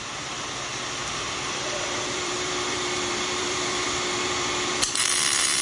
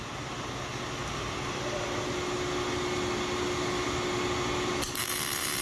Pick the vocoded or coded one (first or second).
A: first